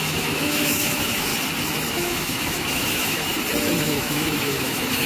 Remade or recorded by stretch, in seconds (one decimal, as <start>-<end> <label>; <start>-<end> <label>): 0.0-1.3 remade; 1.3-1.9 recorded; 1.9-3.3 remade; 3.3-3.8 recorded; 3.8-5.1 remade